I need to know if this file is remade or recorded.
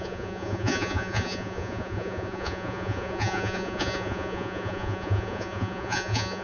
remade